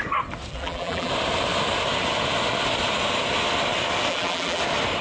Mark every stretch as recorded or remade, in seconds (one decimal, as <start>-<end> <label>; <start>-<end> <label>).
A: 0.0-0.5 recorded; 0.5-1.1 remade; 1.1-4.1 recorded; 4.1-4.6 remade; 4.6-5.0 recorded